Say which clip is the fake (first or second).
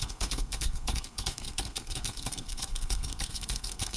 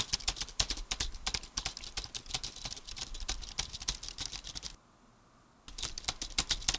first